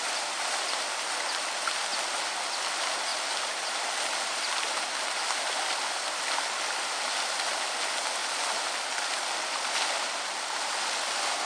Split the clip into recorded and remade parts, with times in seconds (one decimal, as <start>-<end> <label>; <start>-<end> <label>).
0.0-11.5 recorded